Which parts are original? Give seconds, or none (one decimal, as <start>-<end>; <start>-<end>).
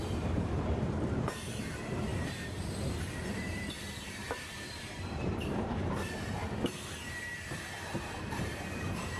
6.4-7.9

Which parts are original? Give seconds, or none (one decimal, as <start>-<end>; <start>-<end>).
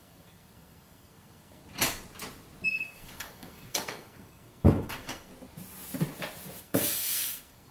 1.6-2.7; 5.3-6.6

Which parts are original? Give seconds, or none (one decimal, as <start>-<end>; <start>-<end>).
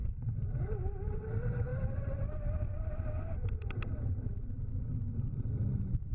0.0-6.1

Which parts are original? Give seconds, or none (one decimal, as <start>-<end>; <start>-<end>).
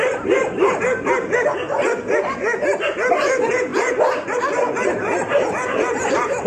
0.0-6.5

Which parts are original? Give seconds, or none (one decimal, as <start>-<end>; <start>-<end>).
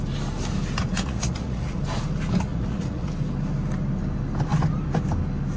0.0-0.8; 1.8-2.5; 3.1-5.6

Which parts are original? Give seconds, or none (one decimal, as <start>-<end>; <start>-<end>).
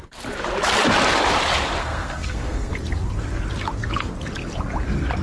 0.0-1.8; 2.7-5.2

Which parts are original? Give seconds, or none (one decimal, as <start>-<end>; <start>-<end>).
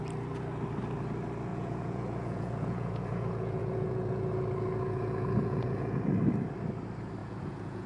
0.0-1.5; 6.0-7.2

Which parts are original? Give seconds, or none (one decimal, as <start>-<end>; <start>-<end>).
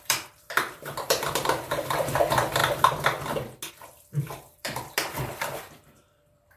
2.6-3.7